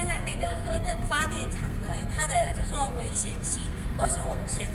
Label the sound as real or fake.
fake